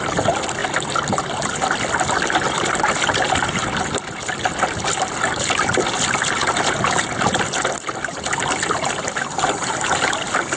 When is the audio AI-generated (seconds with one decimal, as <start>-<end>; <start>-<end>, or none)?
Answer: none